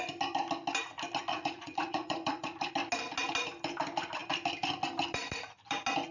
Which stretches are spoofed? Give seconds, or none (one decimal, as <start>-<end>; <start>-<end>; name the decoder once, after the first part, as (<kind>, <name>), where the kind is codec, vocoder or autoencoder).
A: 1.3-2.7 (vocoder, Vocos)